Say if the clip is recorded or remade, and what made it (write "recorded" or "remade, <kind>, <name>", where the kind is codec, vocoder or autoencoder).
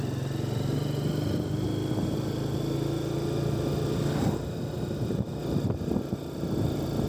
recorded